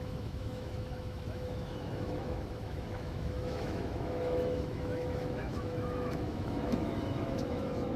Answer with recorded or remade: remade